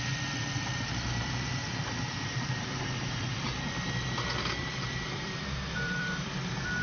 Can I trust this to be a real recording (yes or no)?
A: no